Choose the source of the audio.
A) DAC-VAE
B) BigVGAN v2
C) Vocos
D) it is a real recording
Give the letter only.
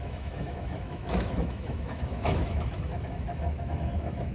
A